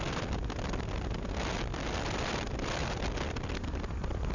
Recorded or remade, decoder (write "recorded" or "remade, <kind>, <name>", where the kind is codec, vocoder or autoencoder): recorded